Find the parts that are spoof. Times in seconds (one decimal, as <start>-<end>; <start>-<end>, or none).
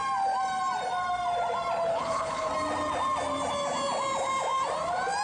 1.9-2.5